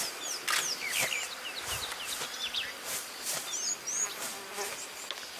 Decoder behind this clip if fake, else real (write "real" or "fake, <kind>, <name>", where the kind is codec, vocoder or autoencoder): real